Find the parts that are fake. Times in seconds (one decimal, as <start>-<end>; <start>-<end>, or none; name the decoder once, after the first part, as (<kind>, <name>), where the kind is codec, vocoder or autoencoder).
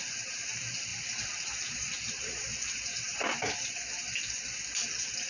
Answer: 0.9-3.7 (vocoder, BigVGAN v2)